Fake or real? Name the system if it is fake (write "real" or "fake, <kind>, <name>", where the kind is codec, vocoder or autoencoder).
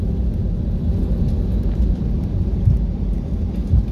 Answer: real